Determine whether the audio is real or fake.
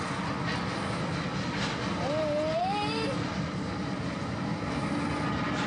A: real